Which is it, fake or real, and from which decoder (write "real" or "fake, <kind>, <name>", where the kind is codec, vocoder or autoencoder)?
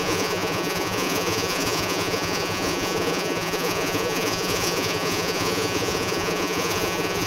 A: fake, vocoder, Vocos